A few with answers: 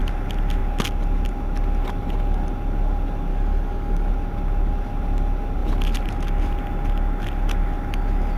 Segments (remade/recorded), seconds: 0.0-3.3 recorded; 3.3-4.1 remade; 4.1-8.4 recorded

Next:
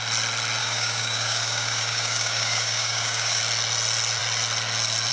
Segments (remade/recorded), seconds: 0.0-0.6 recorded; 0.6-3.4 remade; 3.4-5.1 recorded

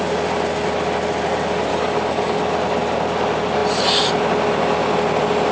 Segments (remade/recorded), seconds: 0.0-1.7 recorded; 1.7-2.4 remade; 2.4-5.5 recorded